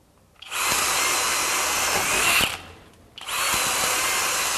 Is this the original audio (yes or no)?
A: yes